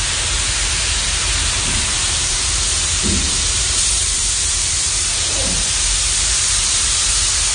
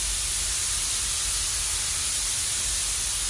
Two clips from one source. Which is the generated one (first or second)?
first